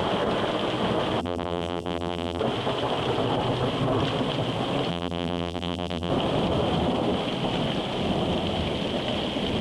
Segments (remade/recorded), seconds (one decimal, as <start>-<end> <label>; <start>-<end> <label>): 0.0-1.2 recorded; 1.2-2.4 remade; 2.4-4.9 recorded; 4.9-6.1 remade; 6.1-9.6 recorded